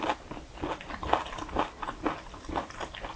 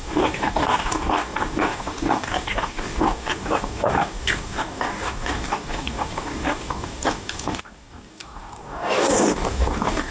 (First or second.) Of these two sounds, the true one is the first